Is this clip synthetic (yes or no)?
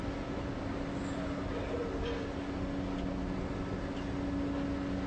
no